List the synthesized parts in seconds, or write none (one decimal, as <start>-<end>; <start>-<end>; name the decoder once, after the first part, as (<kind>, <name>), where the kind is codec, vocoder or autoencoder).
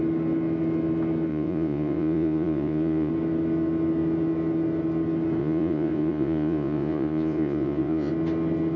1.3-3.1 (vocoder, Vocos); 5.4-8.1